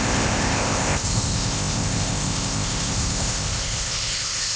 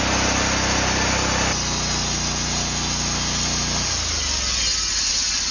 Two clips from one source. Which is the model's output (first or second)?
first